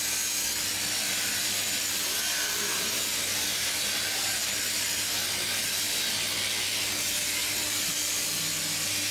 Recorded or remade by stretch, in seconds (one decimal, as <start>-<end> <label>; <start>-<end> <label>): 0.0-1.1 recorded; 1.1-4.3 remade; 4.3-7.4 recorded; 7.4-8.4 remade; 8.4-9.1 recorded

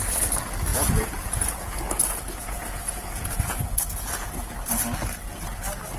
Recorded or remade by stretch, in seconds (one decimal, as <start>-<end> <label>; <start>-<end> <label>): 0.0-0.7 recorded; 0.7-4.3 remade; 4.3-6.0 recorded

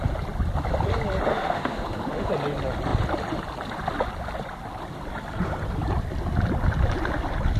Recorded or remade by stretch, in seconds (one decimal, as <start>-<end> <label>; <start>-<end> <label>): 0.0-1.3 recorded; 1.3-2.3 remade; 2.3-7.6 recorded